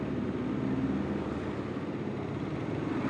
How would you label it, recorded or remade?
recorded